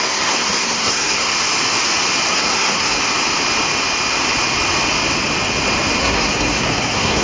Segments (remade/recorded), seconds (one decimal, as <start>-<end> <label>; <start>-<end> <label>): 0.0-1.3 remade; 1.3-2.3 recorded; 2.3-3.0 remade; 3.0-6.0 recorded; 6.0-7.2 remade